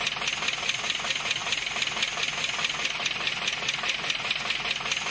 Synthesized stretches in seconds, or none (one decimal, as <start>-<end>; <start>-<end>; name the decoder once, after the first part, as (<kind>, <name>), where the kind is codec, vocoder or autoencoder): none